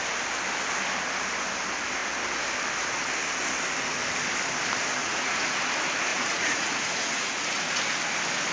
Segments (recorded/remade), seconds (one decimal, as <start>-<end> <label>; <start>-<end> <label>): 0.0-5.0 recorded; 5.0-5.6 remade; 5.6-6.1 recorded; 6.1-7.8 remade; 7.8-8.5 recorded